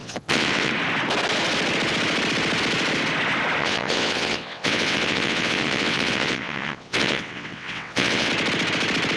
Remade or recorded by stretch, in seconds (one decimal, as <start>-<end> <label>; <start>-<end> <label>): 0.0-0.7 remade; 0.7-3.6 recorded; 3.6-8.3 remade; 8.3-9.2 recorded